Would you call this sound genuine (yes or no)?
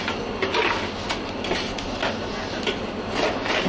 yes